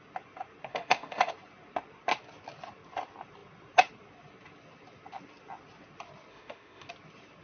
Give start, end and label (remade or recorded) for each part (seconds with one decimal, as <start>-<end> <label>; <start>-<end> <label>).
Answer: 0.0-0.7 recorded; 0.7-1.3 remade; 1.3-6.3 recorded; 6.3-6.9 remade; 6.9-7.4 recorded